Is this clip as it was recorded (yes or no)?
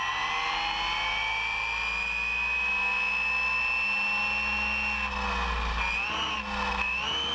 yes